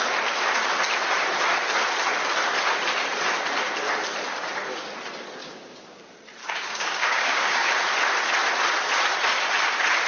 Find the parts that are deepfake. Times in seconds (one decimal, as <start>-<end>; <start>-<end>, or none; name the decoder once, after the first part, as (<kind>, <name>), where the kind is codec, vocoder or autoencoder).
5.4-6.0 (codec, DAC); 6.4-7.7